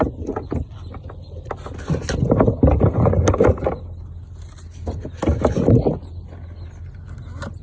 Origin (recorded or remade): recorded